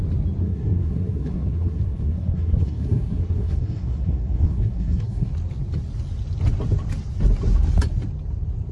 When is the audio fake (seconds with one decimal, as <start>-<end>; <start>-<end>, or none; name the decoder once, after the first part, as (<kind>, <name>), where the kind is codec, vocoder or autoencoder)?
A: 0.4-5.3 (codec, SNAC)